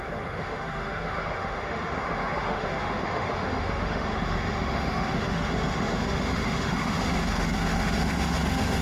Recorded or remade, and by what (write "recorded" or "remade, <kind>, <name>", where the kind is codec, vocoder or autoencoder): remade, autoencoder, DAC-VAE